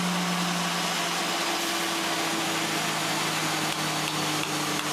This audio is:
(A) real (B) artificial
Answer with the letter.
A